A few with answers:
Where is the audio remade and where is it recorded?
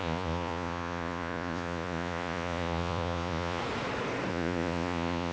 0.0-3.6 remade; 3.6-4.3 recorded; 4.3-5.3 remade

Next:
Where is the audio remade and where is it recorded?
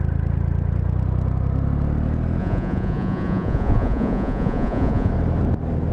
0.0-2.4 recorded; 2.4-5.1 remade; 5.1-5.9 recorded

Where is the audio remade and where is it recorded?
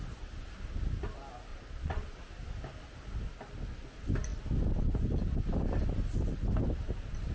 0.0-1.5 recorded; 1.5-2.2 remade; 2.2-7.3 recorded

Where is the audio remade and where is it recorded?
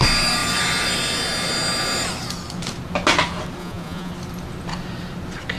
0.0-3.6 recorded; 3.6-4.1 remade; 4.1-5.6 recorded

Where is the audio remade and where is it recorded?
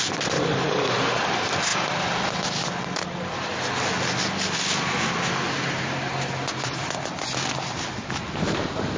0.0-9.0 recorded